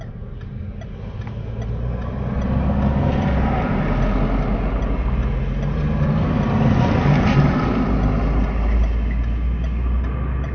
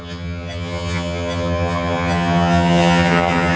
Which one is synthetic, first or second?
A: second